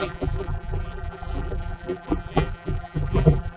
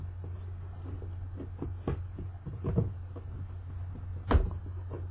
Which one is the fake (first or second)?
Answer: first